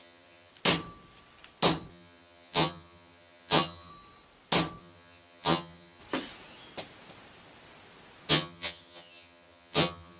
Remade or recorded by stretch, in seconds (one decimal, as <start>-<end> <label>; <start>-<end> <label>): 0.0-0.5 remade; 0.5-1.9 recorded; 1.9-3.9 remade; 3.9-4.8 recorded; 4.8-6.0 remade; 6.0-8.3 recorded; 8.3-10.2 remade